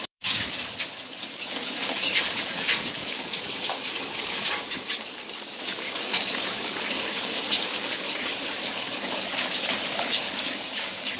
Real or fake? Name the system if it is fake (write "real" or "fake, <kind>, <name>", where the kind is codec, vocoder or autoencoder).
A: fake, codec, DAC